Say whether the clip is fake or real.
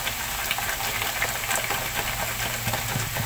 real